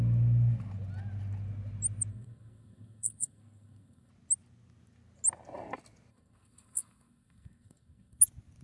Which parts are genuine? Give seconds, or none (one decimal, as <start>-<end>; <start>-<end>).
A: 0.0-2.1; 4.1-6.1; 8.2-8.6